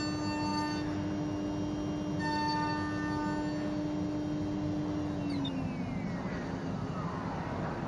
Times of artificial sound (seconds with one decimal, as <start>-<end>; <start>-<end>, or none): none